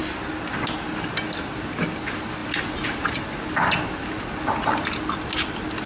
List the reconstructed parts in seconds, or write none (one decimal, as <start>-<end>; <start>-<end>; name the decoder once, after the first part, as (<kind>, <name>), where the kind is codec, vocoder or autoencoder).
none